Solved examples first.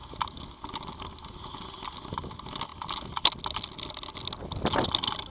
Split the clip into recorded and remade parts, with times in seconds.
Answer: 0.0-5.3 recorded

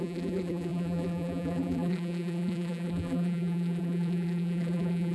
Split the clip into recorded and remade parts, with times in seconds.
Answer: 0.0-5.1 remade